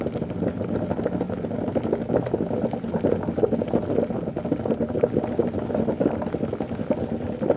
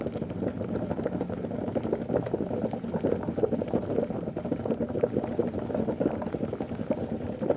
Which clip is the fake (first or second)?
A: second